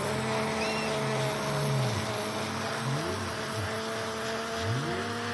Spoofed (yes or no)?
no